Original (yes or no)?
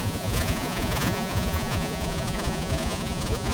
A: no